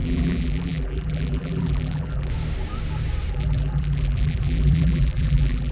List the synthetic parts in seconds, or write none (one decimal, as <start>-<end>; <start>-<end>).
0.0-2.3; 3.3-5.7